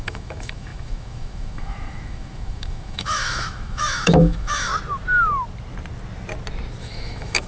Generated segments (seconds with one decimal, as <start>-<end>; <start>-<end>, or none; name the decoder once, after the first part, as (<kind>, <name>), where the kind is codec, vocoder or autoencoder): 0.0-4.7 (autoencoder, DAC-VAE); 6.8-7.5